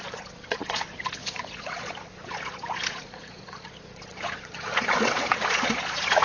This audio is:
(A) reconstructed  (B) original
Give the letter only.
A